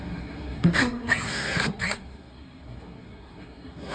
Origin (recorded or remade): remade